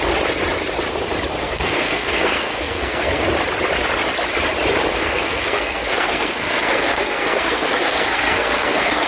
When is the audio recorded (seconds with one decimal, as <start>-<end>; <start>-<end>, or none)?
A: 0.0-1.4; 3.3-4.9